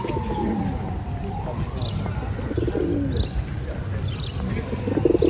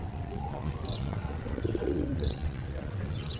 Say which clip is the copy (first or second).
second